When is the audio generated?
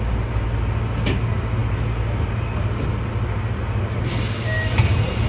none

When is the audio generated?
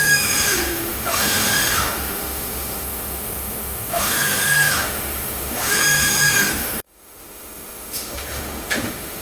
0.0-9.2 (autoencoder, DAC-VAE)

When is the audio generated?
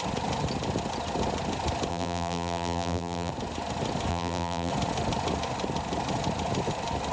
1.9-3.3 (vocoder, BigVGAN v2); 4.1-4.7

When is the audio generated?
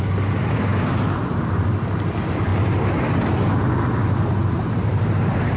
4.4-5.1 (vocoder, BigVGAN v2)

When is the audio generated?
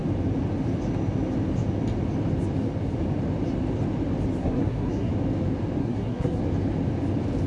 4.4-5.1 (codec, SNAC); 5.8-6.4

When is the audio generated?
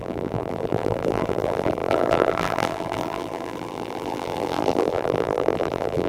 0.0-6.1 (vocoder, BigVGAN v2)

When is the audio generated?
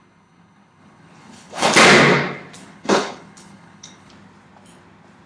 0.0-1.7 (codec, HILCodec); 2.6-4.1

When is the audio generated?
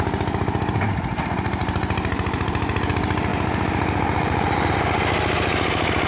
1.6-2.9 (vocoder, BigVGAN v2); 3.3-4.7